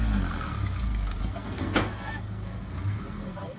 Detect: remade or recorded remade